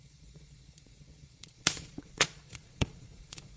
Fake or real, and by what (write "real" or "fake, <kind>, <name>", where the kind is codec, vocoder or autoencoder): fake, vocoder, Vocos